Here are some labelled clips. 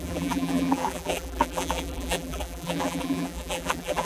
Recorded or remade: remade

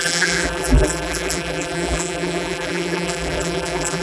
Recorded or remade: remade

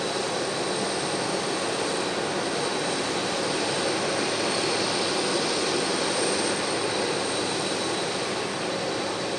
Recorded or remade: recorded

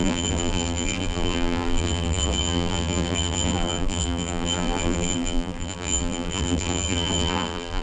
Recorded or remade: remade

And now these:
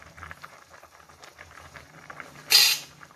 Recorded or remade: remade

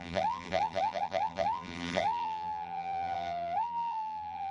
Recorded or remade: remade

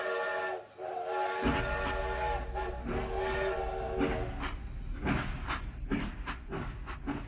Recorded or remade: recorded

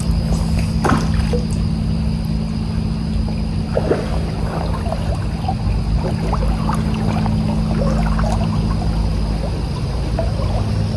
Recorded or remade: recorded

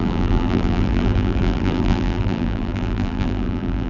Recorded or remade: remade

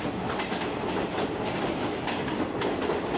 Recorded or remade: recorded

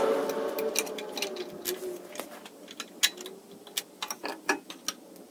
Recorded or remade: recorded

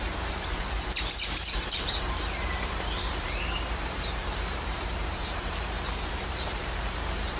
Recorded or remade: remade